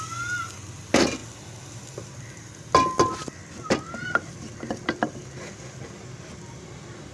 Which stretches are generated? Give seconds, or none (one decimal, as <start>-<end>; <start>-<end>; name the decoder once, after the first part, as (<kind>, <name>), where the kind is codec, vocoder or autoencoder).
none